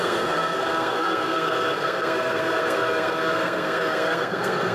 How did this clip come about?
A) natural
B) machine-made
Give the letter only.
B